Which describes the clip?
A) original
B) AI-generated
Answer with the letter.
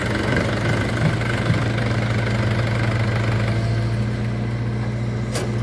A